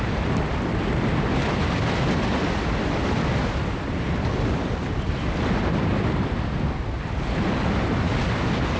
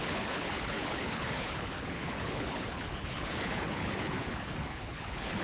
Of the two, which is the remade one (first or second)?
second